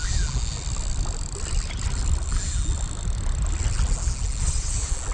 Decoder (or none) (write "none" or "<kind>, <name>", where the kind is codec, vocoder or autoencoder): none